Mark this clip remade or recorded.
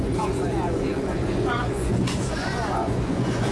remade